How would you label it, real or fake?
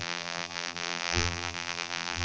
fake